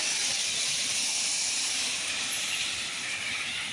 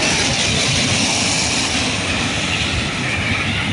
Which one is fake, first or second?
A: first